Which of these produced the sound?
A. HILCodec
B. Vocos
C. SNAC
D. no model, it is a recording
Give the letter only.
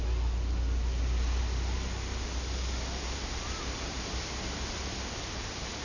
D